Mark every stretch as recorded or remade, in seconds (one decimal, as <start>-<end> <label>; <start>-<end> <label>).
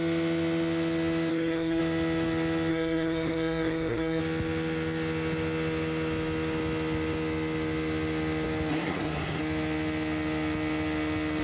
0.0-1.3 recorded; 1.3-1.8 remade; 1.8-2.7 recorded; 2.7-4.2 remade; 4.2-8.7 recorded; 8.7-9.4 remade; 9.4-11.4 recorded